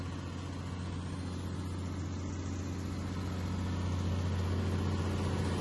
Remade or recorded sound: recorded